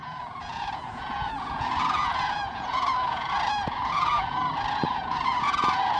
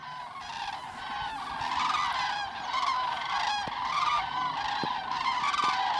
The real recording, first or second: second